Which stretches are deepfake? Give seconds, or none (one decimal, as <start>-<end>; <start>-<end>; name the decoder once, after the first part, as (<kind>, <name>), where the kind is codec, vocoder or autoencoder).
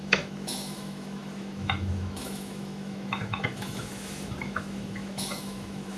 0.0-6.0 (autoencoder, DAC-VAE)